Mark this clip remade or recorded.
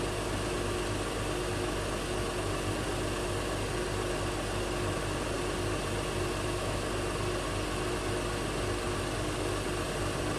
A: recorded